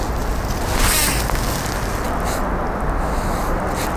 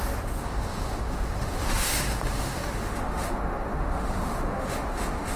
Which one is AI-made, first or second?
second